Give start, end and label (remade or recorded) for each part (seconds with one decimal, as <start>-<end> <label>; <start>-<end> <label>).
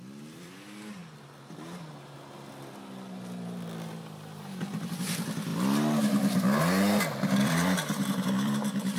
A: 0.0-1.0 remade; 1.0-2.5 recorded; 2.5-5.5 remade; 5.5-6.6 recorded; 6.6-9.0 remade